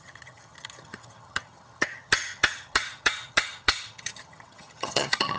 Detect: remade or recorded remade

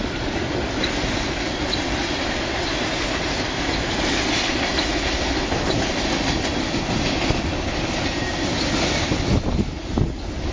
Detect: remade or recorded recorded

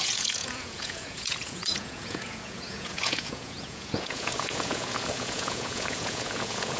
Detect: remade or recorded remade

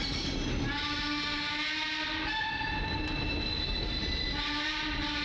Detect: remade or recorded recorded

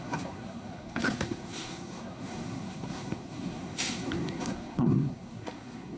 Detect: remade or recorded remade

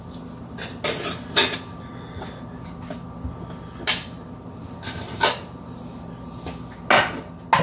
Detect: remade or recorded recorded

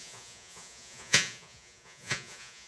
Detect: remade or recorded remade